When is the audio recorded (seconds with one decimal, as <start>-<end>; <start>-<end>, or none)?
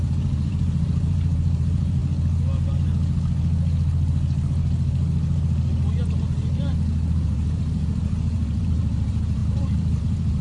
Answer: 2.0-7.1